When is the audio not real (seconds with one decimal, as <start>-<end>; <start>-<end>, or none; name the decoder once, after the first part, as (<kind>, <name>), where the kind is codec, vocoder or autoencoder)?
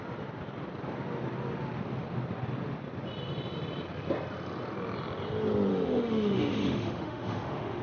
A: 5.7-7.8 (autoencoder, DAC-VAE)